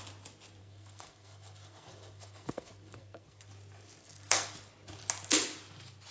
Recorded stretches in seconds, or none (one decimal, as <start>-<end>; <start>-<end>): 0.0-0.6; 3.5-4.0; 4.5-6.1